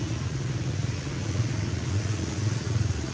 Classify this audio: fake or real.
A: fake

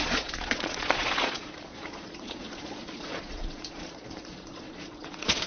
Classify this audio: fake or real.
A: fake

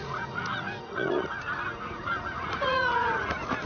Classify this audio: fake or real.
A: fake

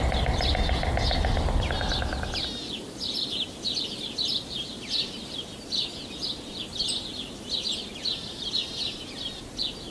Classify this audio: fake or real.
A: real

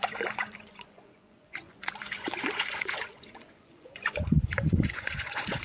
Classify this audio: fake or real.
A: fake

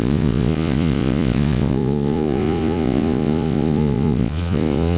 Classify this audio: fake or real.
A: fake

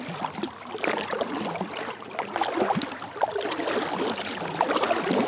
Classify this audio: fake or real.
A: real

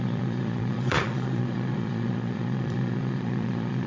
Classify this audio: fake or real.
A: fake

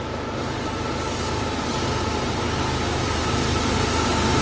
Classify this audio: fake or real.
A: real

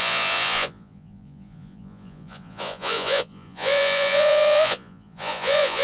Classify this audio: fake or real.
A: fake